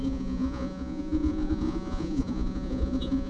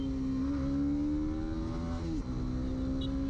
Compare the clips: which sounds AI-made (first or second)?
first